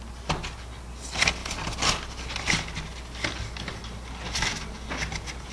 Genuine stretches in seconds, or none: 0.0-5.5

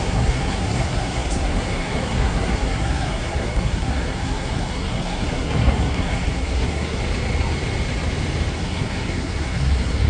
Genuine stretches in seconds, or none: 7.0-8.5

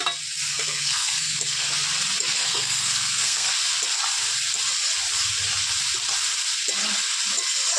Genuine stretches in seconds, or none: 0.0-0.5; 1.7-2.4; 3.5-7.8

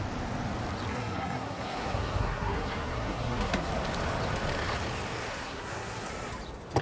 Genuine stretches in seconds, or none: 0.0-0.9; 3.7-5.3; 6.1-6.8